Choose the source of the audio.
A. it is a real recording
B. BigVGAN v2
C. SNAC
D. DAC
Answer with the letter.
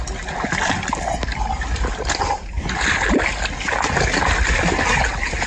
A